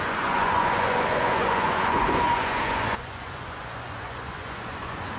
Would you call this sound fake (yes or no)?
yes